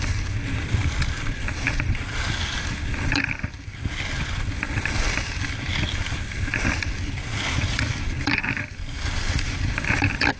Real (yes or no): yes